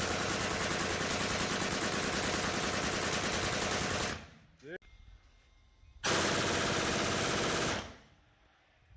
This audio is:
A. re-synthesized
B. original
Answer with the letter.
B